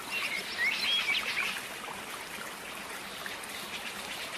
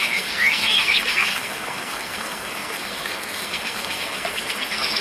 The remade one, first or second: second